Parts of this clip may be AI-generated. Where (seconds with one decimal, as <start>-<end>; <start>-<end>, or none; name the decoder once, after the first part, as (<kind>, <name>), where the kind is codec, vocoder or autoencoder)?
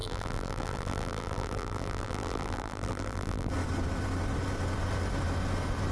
0.0-3.5 (vocoder, BigVGAN v2)